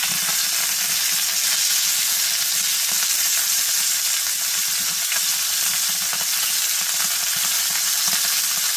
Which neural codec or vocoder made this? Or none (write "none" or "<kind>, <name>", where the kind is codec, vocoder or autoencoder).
none